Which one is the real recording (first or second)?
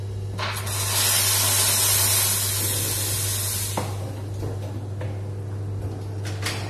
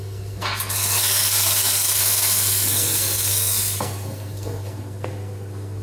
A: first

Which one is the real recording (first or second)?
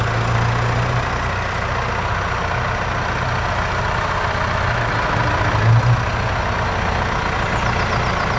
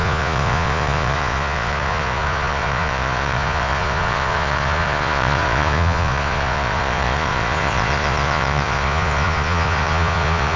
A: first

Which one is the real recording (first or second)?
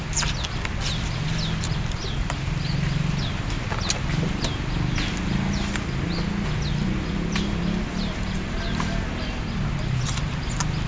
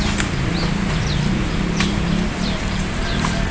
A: first